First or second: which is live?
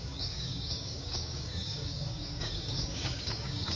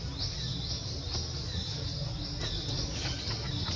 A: second